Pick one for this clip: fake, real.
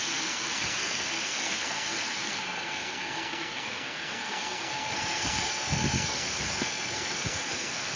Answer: fake